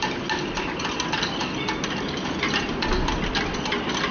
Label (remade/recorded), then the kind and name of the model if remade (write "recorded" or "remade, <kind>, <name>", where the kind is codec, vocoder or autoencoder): recorded